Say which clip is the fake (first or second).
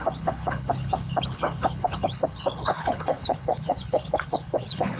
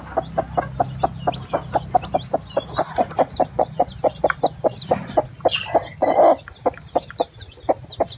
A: first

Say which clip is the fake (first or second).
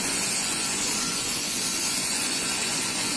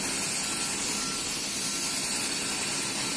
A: first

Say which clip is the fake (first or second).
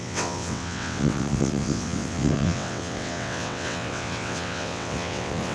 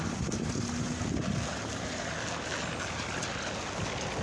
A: first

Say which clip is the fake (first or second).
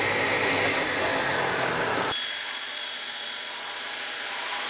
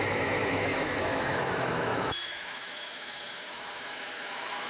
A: second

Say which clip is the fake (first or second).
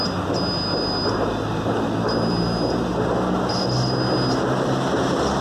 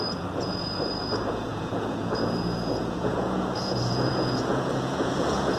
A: second